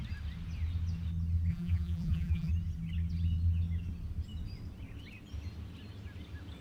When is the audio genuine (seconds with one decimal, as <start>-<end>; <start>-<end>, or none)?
0.0-1.5; 2.5-6.6